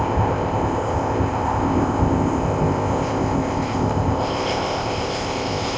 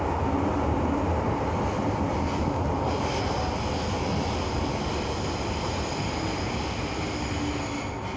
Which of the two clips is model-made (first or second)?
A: first